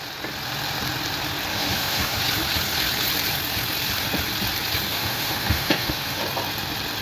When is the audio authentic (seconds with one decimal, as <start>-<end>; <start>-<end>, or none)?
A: 0.0-1.5; 2.2-4.9; 6.2-7.0